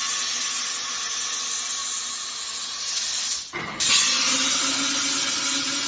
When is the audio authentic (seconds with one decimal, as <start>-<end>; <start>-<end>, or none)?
0.0-5.9